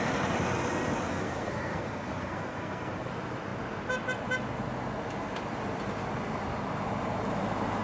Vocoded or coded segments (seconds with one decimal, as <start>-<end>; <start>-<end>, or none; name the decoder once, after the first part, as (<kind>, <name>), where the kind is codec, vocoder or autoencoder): 1.1-3.1 (codec, SNAC)